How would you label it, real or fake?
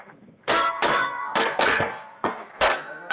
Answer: fake